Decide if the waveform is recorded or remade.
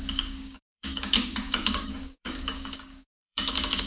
remade